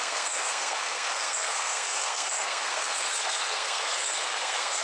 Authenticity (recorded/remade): remade